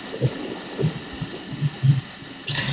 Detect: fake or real fake